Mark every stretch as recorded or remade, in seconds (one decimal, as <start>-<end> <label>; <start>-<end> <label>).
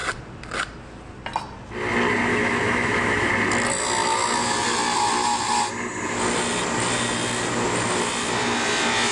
0.0-2.3 recorded; 2.3-3.3 remade; 3.3-9.1 recorded